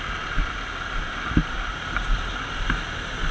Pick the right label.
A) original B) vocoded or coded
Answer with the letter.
A